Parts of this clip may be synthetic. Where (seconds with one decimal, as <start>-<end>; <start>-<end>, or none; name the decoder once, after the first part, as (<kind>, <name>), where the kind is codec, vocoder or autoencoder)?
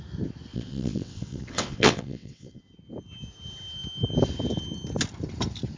0.5-2.6 (vocoder, WaveNeXt)